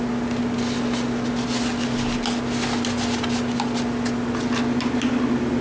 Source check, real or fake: real